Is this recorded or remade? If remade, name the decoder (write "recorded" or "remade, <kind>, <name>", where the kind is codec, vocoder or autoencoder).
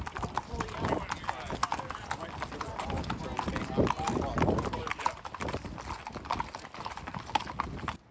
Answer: recorded